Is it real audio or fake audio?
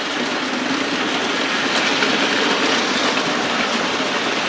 real